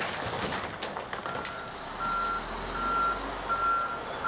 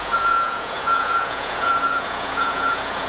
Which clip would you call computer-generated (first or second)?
second